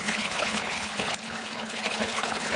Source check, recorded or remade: remade